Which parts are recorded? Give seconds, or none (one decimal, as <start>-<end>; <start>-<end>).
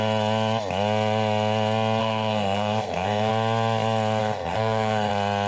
0.0-2.0; 3.3-4.2; 5.1-5.5